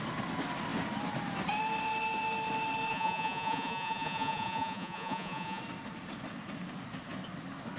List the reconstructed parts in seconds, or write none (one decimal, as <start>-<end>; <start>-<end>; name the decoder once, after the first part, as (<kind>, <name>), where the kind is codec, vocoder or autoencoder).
2.9-5.6 (vocoder, Vocos)